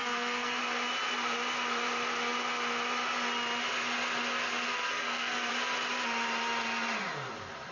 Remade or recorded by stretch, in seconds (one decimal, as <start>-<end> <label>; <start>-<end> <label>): 0.0-0.6 remade; 0.6-4.9 recorded; 4.9-5.5 remade; 5.5-7.7 recorded